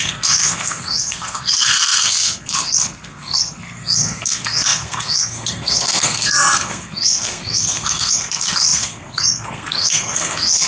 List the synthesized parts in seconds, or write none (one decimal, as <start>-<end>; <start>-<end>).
0.0-10.7